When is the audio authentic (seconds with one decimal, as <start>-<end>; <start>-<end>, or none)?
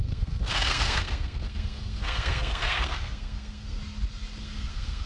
3.8-4.4